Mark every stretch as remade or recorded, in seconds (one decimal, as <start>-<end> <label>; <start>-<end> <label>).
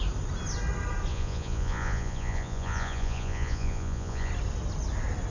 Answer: 0.0-1.1 recorded; 1.1-4.3 remade; 4.3-5.3 recorded